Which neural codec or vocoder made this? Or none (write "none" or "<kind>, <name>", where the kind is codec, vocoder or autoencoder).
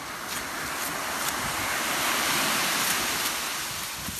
none